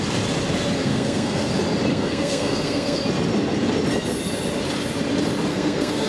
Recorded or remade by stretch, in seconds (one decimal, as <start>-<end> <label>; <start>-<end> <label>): 0.0-0.8 recorded; 0.8-1.5 remade; 1.5-1.9 recorded; 1.9-3.0 remade; 3.0-5.5 recorded; 5.5-6.1 remade